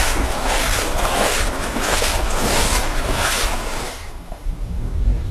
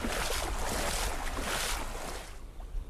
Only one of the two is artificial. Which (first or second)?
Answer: first